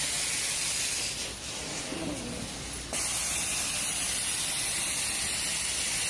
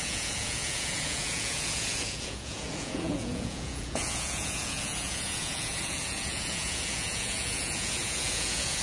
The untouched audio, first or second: first